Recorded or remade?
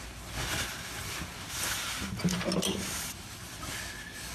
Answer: recorded